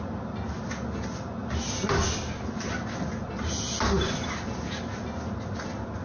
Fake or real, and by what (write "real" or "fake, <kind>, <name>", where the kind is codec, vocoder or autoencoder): real